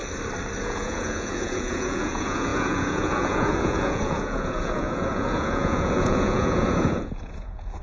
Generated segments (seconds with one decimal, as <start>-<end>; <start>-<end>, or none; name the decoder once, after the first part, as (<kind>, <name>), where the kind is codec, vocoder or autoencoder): 0.6-7.8 (vocoder, Vocos)